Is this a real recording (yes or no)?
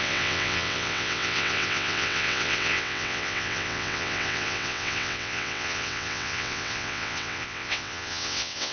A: no